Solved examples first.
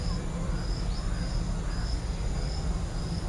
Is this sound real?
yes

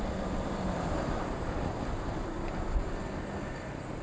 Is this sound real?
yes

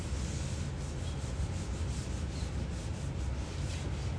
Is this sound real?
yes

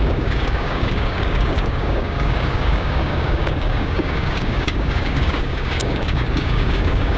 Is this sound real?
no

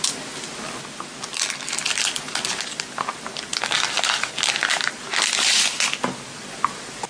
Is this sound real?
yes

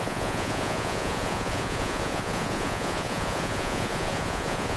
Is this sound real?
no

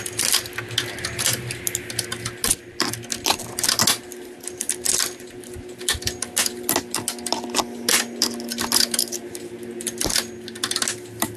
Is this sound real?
yes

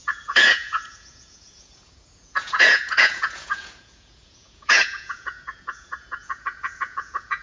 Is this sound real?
no